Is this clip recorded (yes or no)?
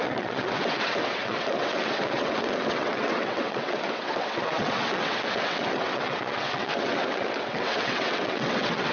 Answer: no